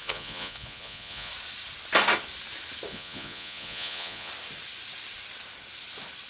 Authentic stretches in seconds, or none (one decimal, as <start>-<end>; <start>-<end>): 1.3-2.9; 4.3-6.3